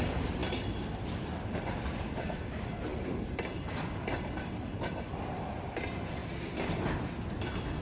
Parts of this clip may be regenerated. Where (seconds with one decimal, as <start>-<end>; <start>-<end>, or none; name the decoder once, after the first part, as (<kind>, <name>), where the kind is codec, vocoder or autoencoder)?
0.0-6.2 (vocoder, BigVGAN v2)

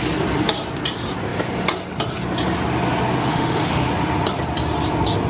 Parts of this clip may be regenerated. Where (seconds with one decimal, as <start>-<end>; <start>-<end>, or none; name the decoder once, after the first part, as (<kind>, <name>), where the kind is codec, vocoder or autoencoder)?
3.2-3.9 (autoencoder, DAC-VAE)

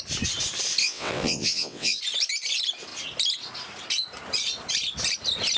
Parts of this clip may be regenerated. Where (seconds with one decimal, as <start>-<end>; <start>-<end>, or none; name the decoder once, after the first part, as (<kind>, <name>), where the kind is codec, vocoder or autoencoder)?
0.8-2.0 (vocoder, WaveNeXt)

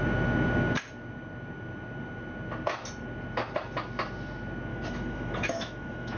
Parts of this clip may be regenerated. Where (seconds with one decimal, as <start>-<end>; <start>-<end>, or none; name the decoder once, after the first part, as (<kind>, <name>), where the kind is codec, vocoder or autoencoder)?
4.7-6.2 (autoencoder, DAC-VAE)